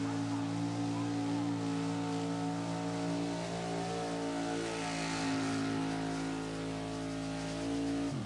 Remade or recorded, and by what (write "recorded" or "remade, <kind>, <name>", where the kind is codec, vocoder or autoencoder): recorded